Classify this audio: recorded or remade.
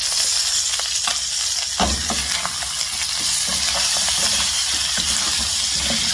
recorded